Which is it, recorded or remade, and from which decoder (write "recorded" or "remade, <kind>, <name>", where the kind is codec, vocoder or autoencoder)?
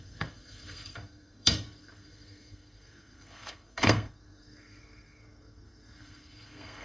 remade, codec, SNAC